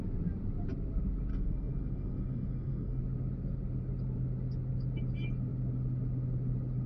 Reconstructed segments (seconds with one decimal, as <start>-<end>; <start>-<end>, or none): 1.3-3.0